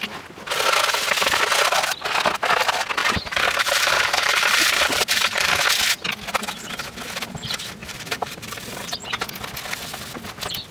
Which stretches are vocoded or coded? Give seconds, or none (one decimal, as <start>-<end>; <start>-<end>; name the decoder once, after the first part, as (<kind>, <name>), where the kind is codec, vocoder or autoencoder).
3.0-5.5 (vocoder, BigVGAN v2); 7.8-9.1